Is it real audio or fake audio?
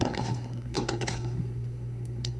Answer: fake